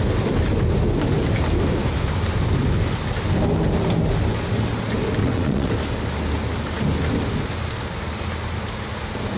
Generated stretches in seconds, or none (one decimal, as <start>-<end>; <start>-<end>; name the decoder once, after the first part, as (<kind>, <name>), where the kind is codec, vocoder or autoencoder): 5.2-5.7 (vocoder, WaveNeXt)